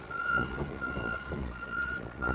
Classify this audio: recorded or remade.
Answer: remade